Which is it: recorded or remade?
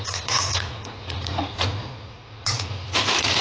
remade